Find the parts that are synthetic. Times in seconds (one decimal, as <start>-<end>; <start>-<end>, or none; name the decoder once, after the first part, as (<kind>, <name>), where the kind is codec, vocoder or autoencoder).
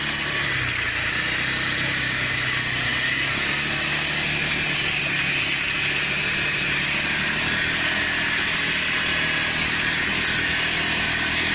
none